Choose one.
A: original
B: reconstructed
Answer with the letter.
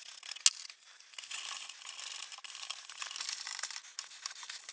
A